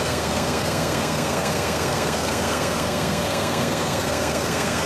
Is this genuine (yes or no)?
no